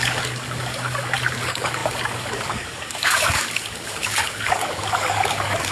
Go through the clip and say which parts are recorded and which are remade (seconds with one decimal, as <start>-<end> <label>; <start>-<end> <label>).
0.0-5.7 remade